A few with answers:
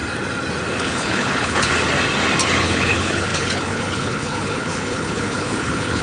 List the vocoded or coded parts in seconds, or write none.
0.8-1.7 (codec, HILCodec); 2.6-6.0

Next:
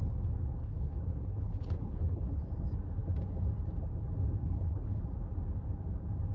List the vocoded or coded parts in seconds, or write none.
0.6-2.4 (codec, HILCodec); 4.4-5.0

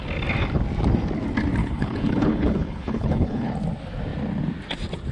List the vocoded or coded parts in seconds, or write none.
1.6-3.5 (codec, HILCodec)

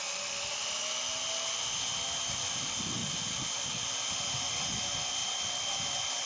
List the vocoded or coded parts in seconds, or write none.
none

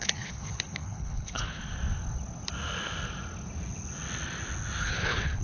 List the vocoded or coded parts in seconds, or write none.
0.0-1.6 (codec, HILCodec); 4.8-5.4

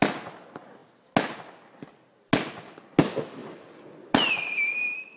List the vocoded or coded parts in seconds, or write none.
none